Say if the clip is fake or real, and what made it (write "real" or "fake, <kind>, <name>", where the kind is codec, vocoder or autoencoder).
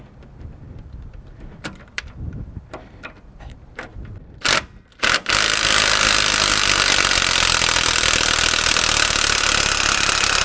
fake, vocoder, BigVGAN v2